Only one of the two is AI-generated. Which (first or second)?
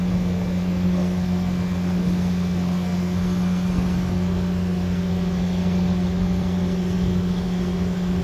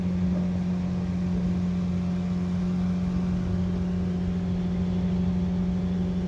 first